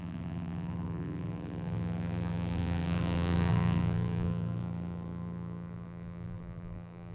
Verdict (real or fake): fake